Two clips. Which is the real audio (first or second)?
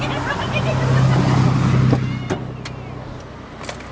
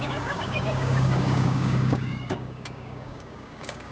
first